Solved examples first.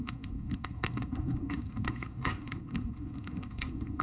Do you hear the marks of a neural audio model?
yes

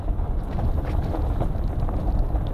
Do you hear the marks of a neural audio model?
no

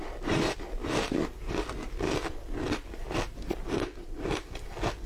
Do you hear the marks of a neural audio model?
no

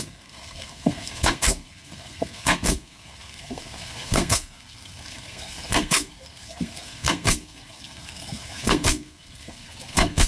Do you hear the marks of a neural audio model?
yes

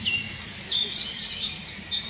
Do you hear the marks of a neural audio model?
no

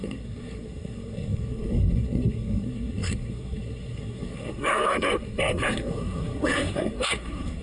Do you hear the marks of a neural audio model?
yes